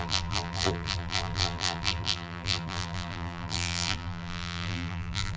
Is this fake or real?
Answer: fake